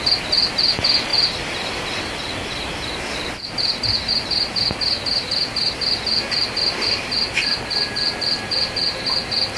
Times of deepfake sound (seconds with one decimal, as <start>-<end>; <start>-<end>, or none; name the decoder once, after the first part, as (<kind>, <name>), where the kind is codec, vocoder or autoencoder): none